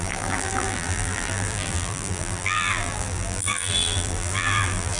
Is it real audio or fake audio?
fake